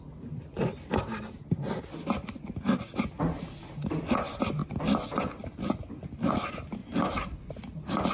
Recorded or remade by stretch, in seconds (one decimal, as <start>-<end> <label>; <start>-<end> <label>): 0.0-6.8 recorded; 6.8-7.6 remade; 7.6-8.1 recorded